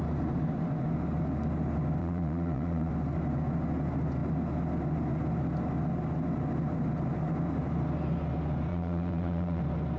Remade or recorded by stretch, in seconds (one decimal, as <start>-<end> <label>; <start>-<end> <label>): 0.0-2.0 recorded; 2.0-2.9 remade; 2.9-8.7 recorded; 8.7-9.6 remade; 9.6-10.0 recorded